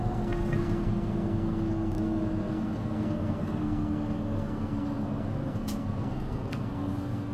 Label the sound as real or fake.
fake